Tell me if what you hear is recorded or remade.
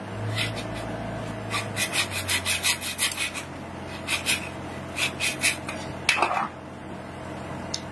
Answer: recorded